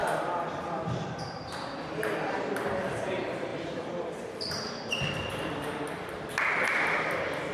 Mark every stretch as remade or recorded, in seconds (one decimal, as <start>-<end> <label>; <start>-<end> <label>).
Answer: 0.0-2.9 remade; 2.9-3.5 recorded; 3.5-6.3 remade; 6.3-6.7 recorded; 6.7-7.5 remade